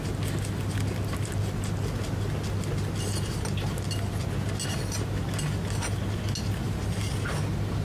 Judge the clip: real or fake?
real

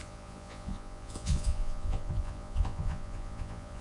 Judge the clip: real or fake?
fake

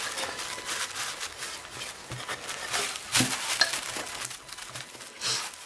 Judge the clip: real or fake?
real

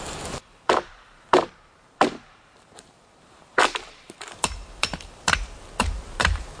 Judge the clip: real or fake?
fake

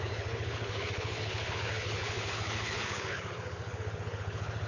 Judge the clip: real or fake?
fake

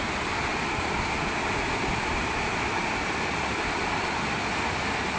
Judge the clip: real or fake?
real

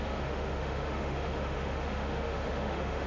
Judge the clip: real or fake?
fake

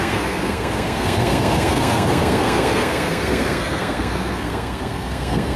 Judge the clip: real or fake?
fake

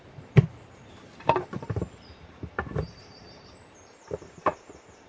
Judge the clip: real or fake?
fake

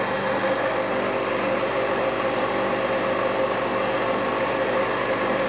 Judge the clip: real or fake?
real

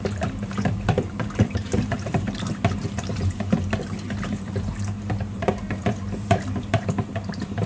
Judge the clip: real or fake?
fake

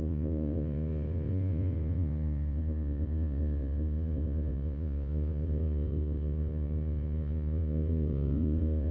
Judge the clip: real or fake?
fake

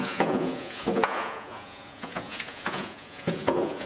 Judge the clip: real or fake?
fake